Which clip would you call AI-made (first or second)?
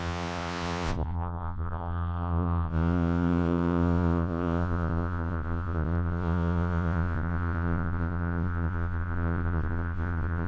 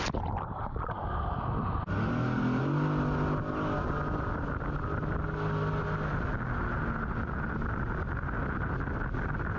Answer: first